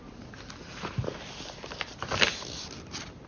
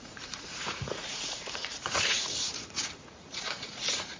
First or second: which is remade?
second